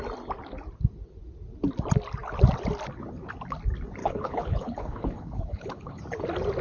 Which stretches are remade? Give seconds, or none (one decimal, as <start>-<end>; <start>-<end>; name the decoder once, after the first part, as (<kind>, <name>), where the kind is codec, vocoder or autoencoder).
4.0-6.0 (codec, HILCodec)